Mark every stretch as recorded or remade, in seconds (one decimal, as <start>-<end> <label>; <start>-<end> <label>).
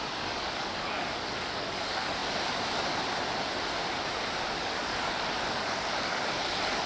0.0-2.2 remade; 2.2-4.4 recorded; 4.4-6.9 remade